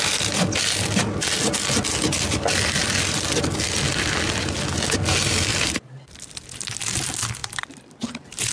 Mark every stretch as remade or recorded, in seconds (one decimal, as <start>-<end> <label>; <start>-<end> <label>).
0.0-2.8 recorded; 2.8-3.3 remade; 3.3-7.4 recorded; 7.4-8.0 remade; 8.0-8.5 recorded